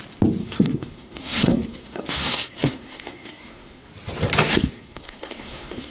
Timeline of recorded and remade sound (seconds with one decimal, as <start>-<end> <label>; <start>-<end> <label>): 0.0-0.4 recorded; 0.4-3.9 remade; 3.9-4.5 recorded; 4.5-5.9 remade